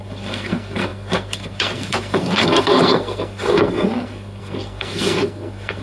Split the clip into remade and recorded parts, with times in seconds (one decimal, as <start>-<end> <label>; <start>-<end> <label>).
0.0-5.8 remade